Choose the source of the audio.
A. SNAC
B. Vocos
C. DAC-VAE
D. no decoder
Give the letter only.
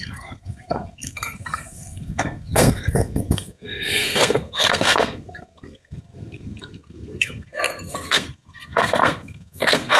A